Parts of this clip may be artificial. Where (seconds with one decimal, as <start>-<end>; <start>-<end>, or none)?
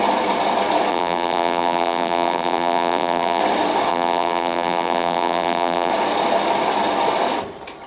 0.9-3.4; 3.9-5.9